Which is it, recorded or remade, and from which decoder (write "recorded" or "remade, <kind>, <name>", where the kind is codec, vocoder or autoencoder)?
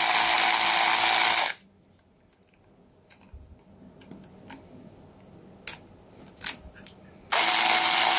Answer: recorded